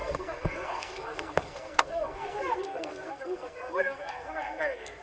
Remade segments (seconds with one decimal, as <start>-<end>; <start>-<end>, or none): 0.0-5.0